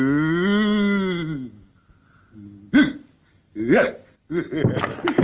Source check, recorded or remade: recorded